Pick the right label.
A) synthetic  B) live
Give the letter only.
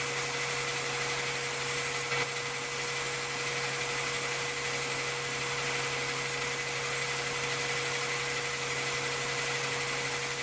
B